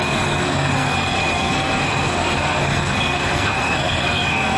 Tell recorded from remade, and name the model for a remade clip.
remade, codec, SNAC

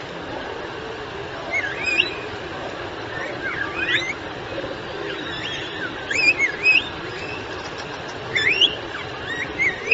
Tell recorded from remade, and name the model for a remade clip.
recorded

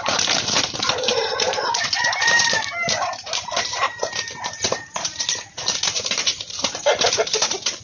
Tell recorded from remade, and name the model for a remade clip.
remade, vocoder, BigVGAN v2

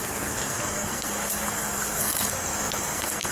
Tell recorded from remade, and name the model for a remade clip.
remade, codec, SNAC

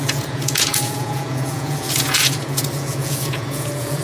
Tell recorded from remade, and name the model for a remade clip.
remade, vocoder, Vocos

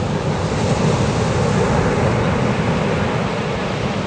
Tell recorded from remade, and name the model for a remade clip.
recorded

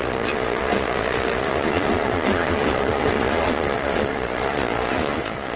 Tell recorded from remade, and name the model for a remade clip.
remade, vocoder, Vocos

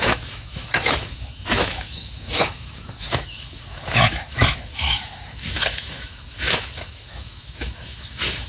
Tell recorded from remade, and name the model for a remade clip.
remade, autoencoder, DAC-VAE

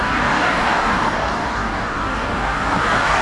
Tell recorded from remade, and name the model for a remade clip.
remade, codec, DAC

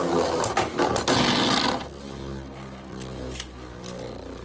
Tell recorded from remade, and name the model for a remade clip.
recorded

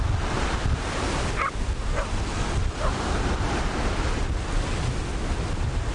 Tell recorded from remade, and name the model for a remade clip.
recorded